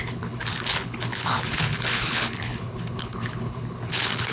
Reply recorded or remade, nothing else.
remade